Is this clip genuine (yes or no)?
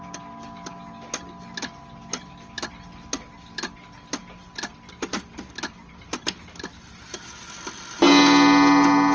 yes